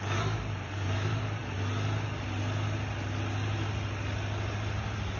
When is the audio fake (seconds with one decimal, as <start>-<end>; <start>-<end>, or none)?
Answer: 0.0-1.4; 4.5-5.2